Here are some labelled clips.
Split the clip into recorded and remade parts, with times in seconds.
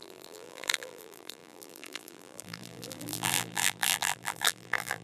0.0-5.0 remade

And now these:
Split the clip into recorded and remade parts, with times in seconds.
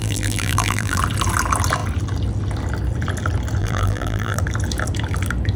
0.0-1.0 remade; 1.0-3.6 recorded; 3.6-4.4 remade; 4.4-5.6 recorded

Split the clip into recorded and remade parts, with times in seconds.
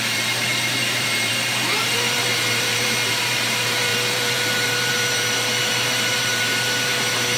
0.0-7.4 remade